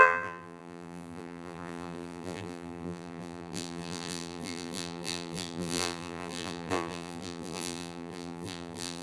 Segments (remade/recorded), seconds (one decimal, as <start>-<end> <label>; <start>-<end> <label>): 0.0-9.0 remade